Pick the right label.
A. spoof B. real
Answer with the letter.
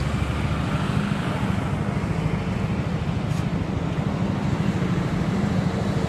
B